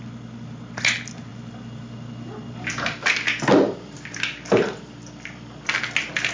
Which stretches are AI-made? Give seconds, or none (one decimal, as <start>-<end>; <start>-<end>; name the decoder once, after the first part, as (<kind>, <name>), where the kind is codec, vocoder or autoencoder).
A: none